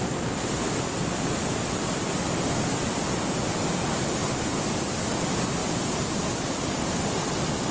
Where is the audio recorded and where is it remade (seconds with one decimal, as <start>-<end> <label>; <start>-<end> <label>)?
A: 0.0-7.7 recorded